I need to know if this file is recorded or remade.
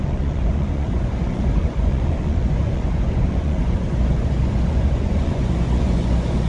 remade